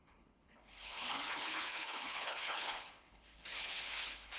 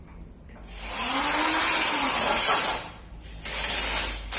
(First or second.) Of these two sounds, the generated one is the first